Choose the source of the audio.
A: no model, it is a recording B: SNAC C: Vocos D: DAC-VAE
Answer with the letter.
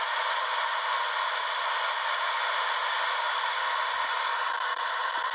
A